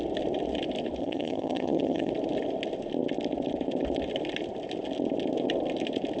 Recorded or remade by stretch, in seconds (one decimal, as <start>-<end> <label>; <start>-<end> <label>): 0.0-1.0 recorded; 1.0-2.1 remade; 2.1-6.2 recorded